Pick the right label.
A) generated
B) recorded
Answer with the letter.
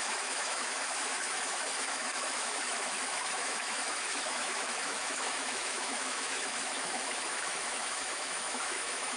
A